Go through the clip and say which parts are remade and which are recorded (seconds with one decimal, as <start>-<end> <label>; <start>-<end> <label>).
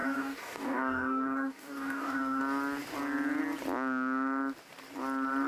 0.0-2.4 remade; 2.4-5.5 recorded